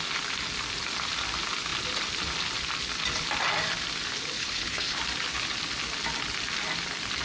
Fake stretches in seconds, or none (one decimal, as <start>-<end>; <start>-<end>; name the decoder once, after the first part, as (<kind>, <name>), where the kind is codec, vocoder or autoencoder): 4.4-5.0 (codec, HILCodec)